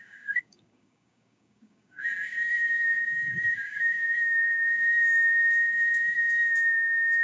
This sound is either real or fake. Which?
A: fake